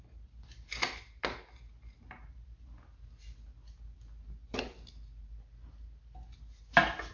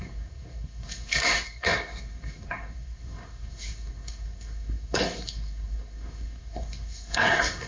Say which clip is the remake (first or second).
second